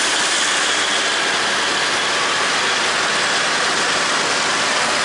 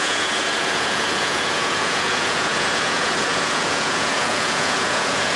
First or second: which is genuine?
first